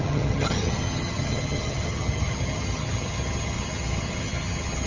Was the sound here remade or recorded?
remade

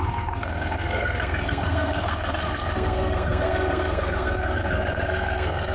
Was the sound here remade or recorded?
remade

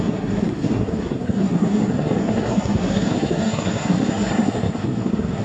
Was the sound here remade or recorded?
remade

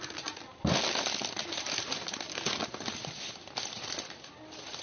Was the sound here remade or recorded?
recorded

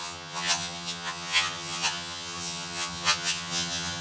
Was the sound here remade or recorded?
remade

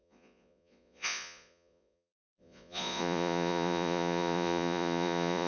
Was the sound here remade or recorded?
remade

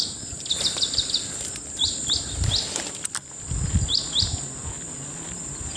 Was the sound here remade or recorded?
recorded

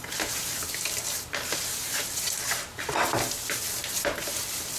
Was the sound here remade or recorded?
recorded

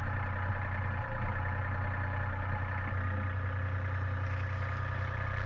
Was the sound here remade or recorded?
recorded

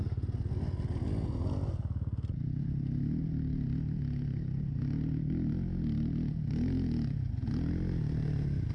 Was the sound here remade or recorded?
recorded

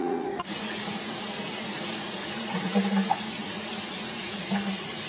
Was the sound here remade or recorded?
remade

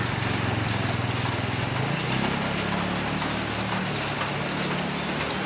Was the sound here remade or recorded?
recorded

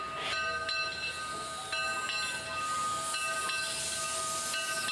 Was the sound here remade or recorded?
recorded